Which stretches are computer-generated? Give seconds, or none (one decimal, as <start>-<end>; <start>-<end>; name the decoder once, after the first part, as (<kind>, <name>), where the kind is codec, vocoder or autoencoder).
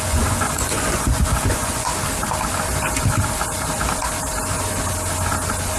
0.0-1.9 (vocoder, Vocos)